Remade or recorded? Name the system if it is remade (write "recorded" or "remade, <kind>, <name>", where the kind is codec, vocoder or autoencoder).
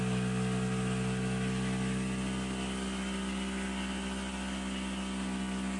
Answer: recorded